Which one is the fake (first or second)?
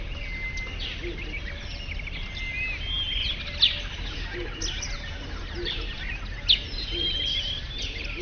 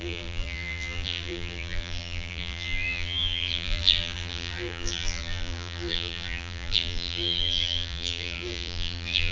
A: second